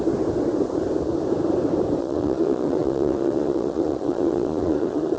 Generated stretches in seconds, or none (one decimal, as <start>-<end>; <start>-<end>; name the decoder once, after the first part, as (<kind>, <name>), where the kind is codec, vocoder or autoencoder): 2.0-5.2 (vocoder, Vocos)